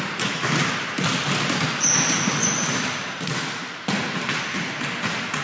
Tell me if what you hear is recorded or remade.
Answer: recorded